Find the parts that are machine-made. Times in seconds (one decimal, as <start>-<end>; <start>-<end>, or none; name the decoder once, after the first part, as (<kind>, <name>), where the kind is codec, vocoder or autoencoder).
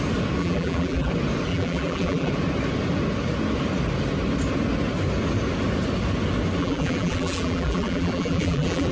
0.4-1.1 (vocoder, BigVGAN v2); 1.5-2.3; 6.6-8.9